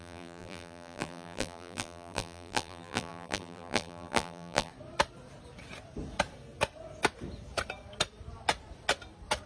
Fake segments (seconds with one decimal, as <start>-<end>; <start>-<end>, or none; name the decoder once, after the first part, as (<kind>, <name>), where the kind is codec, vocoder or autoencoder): 0.0-4.7 (vocoder, BigVGAN v2)